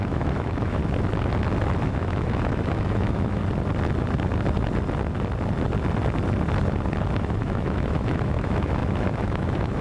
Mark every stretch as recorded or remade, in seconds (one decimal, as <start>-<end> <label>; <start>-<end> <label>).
0.0-0.8 remade; 0.8-1.8 recorded; 1.8-3.4 remade; 3.4-7.2 recorded; 7.2-9.8 remade